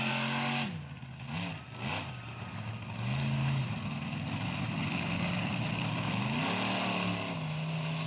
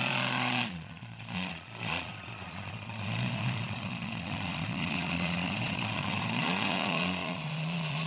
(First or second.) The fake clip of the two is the second